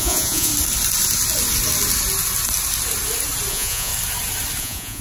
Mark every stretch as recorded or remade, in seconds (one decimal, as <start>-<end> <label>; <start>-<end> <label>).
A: 0.0-0.5 remade; 0.5-3.5 recorded; 3.5-3.9 remade; 3.9-4.6 recorded; 4.6-5.0 remade